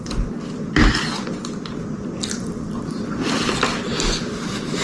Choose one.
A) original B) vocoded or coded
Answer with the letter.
A